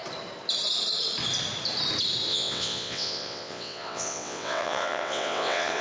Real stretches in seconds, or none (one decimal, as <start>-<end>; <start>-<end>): 0.0-2.3